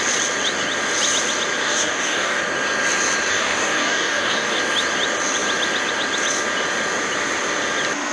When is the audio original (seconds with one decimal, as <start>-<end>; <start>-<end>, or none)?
0.0-1.6; 2.4-3.3; 4.6-8.1